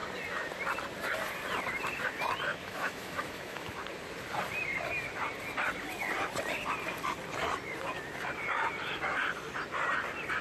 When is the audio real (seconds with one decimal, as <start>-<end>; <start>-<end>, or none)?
0.0-2.5; 3.8-10.4